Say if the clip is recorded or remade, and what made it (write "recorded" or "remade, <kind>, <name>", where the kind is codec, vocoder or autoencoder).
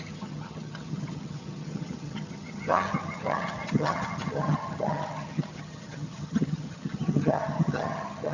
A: remade, vocoder, HiFi-GAN